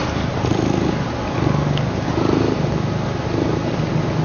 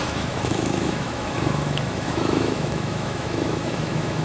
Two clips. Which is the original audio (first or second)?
first